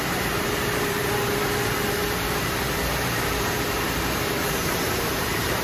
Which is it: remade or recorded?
remade